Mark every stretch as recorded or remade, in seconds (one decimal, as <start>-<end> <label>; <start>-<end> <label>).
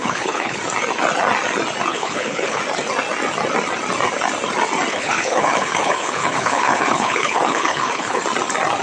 0.0-0.6 remade; 0.6-1.9 recorded; 1.9-2.6 remade; 2.6-4.9 recorded; 4.9-8.2 remade; 8.2-8.8 recorded